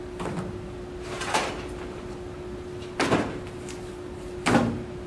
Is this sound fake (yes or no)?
no